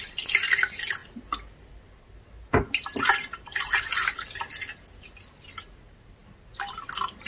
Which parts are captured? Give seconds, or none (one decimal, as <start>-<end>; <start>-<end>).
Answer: 0.0-7.3